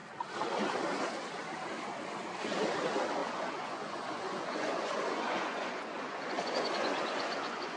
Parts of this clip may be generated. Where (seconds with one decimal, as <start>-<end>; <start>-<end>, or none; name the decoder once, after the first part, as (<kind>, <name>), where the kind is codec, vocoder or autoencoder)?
3.2-7.8 (vocoder, Vocos)